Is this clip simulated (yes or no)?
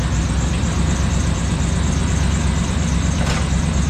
yes